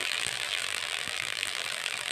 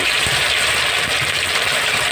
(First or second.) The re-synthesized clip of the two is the first